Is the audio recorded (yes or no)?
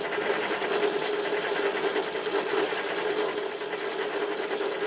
yes